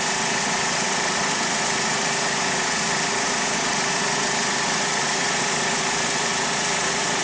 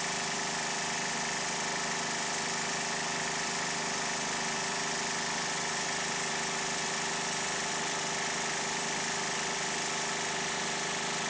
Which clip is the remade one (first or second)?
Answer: first